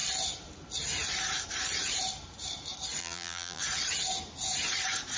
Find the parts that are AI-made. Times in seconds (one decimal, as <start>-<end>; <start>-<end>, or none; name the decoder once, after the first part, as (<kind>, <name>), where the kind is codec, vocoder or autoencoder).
3.0-3.6 (vocoder, BigVGAN v2)